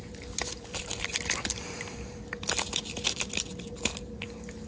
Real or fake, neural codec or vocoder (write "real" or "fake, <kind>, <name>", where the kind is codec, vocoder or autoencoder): real